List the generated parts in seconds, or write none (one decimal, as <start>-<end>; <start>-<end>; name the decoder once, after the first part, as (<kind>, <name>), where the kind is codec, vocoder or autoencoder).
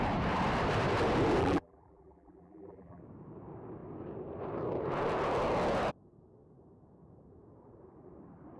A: 1.4-3.0 (vocoder, BigVGAN v2)